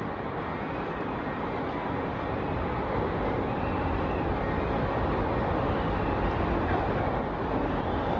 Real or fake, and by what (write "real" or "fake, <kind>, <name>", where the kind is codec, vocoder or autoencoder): real